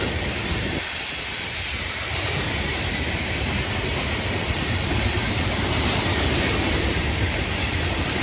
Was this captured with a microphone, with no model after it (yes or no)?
no